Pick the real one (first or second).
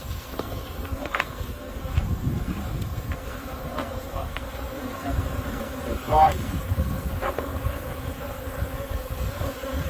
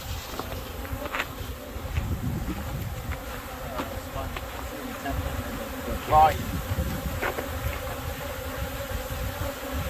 second